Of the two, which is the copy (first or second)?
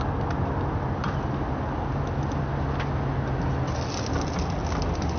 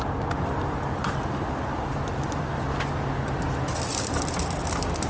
second